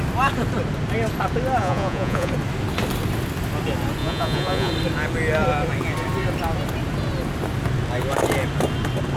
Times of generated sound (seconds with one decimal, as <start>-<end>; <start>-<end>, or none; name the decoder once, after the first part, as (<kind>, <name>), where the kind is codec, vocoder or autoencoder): 1.6-2.3 (vocoder, Vocos); 4.0-4.7